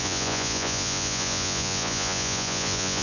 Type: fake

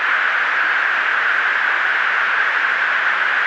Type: real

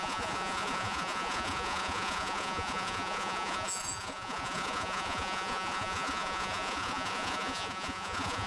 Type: fake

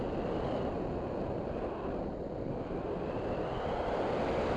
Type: real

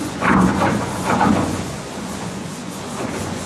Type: fake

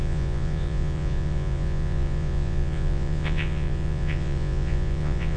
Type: fake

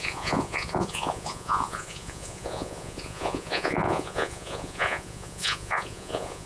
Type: fake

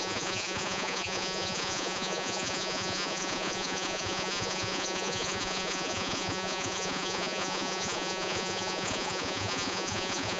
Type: fake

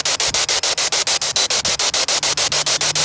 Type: real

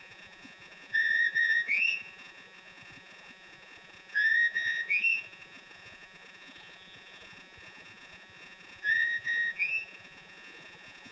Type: fake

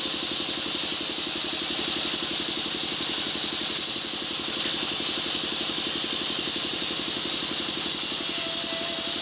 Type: real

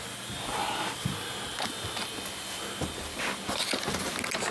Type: real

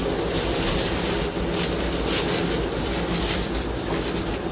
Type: real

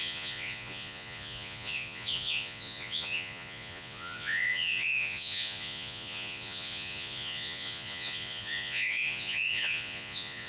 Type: fake